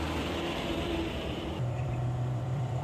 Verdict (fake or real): fake